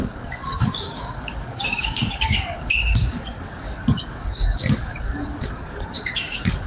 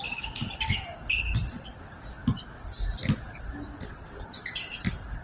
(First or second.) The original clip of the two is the second